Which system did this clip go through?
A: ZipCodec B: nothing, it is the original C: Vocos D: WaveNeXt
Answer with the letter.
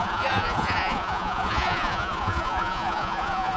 C